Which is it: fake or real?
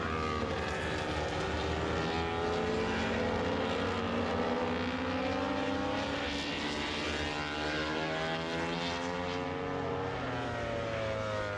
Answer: real